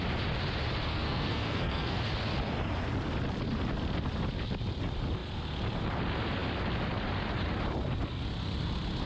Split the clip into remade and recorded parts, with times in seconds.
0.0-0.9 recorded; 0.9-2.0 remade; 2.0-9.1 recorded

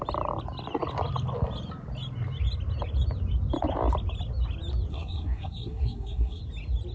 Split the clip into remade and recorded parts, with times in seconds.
0.0-4.9 recorded; 4.9-6.4 remade; 6.4-6.9 recorded

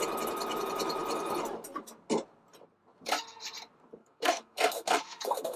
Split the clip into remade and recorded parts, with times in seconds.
0.0-4.0 recorded; 4.0-5.6 remade

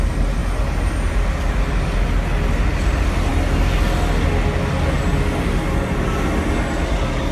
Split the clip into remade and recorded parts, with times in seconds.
0.0-7.3 recorded

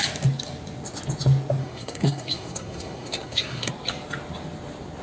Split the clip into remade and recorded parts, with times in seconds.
0.0-1.6 recorded; 1.6-3.7 remade; 3.7-5.0 recorded

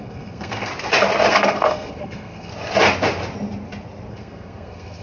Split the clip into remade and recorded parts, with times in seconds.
0.0-0.7 remade; 0.7-1.3 recorded; 1.3-2.5 remade; 2.5-4.1 recorded; 4.1-5.0 remade

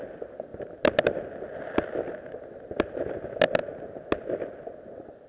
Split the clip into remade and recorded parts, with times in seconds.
0.0-5.3 recorded